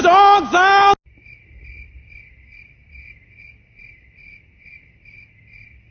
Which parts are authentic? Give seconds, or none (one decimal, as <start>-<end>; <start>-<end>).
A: 0.0-5.9